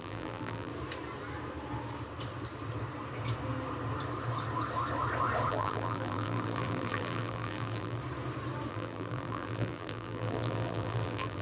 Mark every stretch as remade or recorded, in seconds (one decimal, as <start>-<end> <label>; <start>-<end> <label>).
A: 0.0-0.7 remade; 0.7-5.5 recorded; 5.5-8.0 remade; 8.0-8.7 recorded; 8.7-11.4 remade